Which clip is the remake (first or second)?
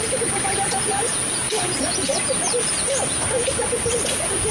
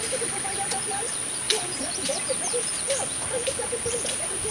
second